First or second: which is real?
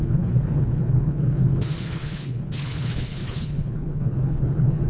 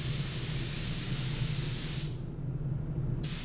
second